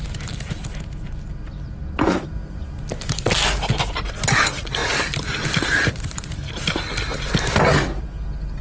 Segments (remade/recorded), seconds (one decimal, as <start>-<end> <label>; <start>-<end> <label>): 0.0-4.8 recorded; 4.8-6.5 remade; 6.5-8.6 recorded